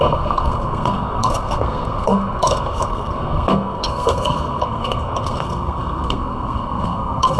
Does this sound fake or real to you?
fake